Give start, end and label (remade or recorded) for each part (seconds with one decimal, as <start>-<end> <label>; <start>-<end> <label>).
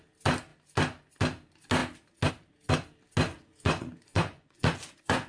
0.0-3.3 recorded; 3.3-5.3 remade